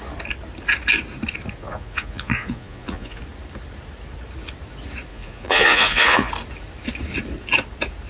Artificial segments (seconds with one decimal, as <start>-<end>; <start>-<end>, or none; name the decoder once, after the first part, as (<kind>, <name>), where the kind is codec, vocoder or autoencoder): 1.6-3.2 (vocoder, Vocos); 5.1-6.3